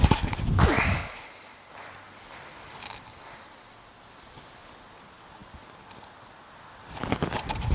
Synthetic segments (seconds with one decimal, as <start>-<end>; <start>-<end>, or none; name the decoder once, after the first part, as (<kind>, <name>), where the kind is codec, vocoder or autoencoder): none